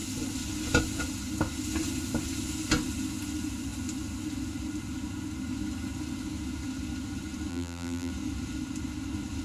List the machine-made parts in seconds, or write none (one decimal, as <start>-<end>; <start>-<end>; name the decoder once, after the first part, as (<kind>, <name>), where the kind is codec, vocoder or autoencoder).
7.5-8.1 (vocoder, BigVGAN v2)